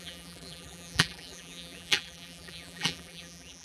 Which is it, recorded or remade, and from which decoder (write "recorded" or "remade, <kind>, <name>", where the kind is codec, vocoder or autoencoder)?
remade, vocoder, BigVGAN v2